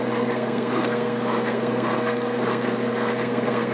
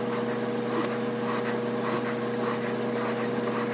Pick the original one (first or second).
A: second